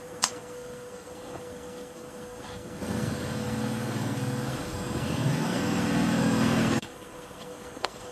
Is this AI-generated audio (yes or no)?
yes